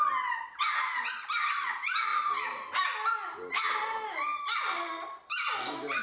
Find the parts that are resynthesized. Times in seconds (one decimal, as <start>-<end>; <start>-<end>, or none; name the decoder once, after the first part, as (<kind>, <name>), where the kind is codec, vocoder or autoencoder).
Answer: none